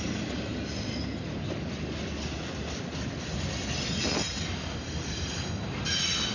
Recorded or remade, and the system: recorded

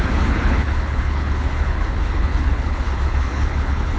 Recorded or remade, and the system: remade, codec, HILCodec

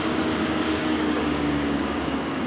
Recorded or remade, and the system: remade, codec, DAC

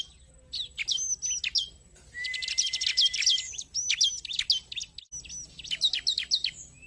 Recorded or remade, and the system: recorded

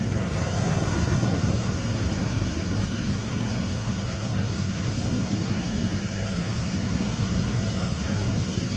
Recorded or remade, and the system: remade, codec, SNAC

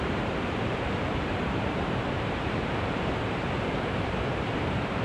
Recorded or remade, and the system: remade, vocoder, BigVGAN v2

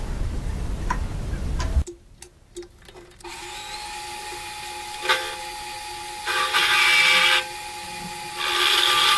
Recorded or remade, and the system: recorded